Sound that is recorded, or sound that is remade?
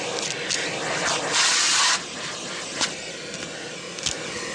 recorded